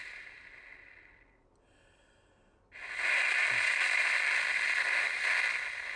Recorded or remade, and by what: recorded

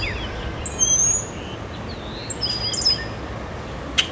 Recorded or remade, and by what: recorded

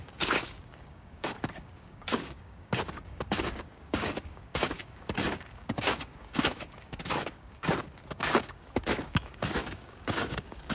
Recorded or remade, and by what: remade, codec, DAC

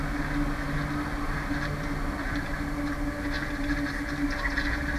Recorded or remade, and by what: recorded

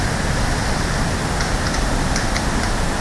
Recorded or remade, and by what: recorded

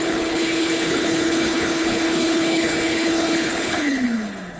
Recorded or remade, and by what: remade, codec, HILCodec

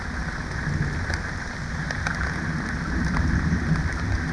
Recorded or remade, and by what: recorded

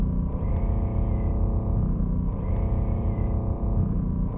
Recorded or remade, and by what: remade, vocoder, BigVGAN v2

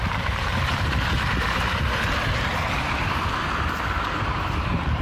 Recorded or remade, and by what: remade, vocoder, BigVGAN v2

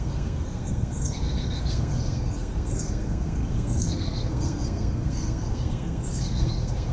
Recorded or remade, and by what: remade, codec, SNAC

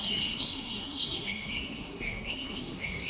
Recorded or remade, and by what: remade, codec, SNAC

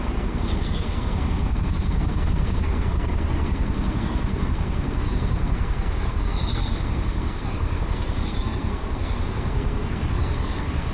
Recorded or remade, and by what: remade, codec, SNAC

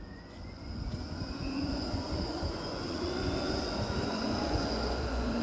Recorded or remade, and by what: remade, vocoder, Vocos